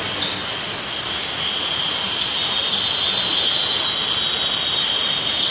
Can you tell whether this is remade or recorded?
recorded